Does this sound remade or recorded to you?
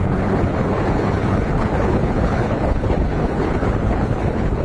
remade